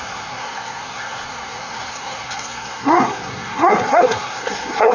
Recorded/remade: remade